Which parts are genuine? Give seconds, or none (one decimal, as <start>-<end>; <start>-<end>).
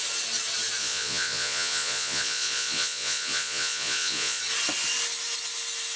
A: 0.0-0.8; 4.4-6.0